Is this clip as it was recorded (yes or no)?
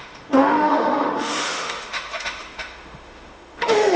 no